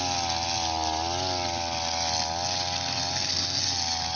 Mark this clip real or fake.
real